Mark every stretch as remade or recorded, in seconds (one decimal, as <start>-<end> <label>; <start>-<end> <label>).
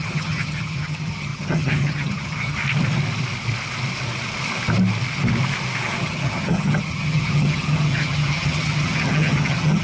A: 0.0-2.6 remade; 2.6-6.0 recorded; 6.0-9.8 remade